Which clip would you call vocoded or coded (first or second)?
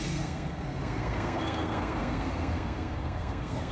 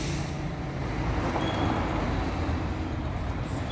first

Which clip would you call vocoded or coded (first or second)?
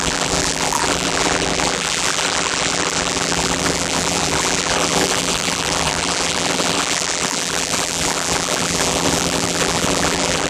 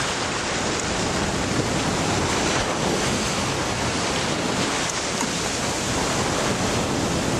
first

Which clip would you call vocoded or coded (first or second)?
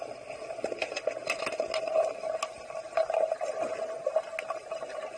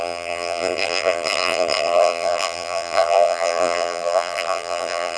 second